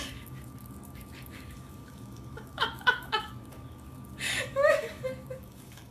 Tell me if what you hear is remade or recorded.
remade